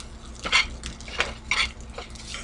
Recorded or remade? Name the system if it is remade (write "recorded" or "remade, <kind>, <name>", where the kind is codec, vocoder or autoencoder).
recorded